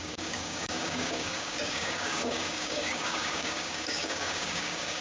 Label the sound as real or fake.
fake